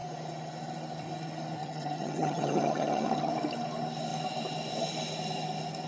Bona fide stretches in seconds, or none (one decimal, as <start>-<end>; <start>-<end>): 0.0-1.6; 3.3-5.9